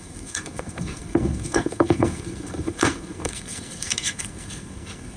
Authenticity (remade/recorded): remade